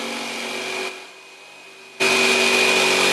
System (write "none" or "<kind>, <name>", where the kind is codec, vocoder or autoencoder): none